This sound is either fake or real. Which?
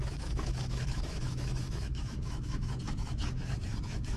fake